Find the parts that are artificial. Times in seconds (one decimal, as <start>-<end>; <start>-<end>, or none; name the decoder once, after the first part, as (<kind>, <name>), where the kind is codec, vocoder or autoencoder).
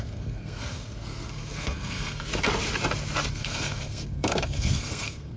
0.0-2.3 (codec, SNAC); 3.3-5.4